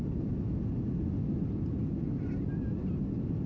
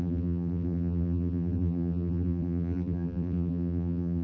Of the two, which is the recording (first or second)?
first